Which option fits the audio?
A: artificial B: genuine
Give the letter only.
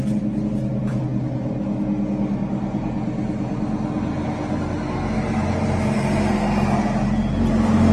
B